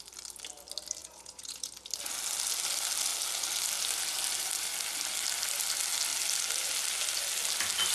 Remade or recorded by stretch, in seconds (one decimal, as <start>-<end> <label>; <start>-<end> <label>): 0.0-1.0 recorded; 1.0-1.7 remade; 1.7-7.9 recorded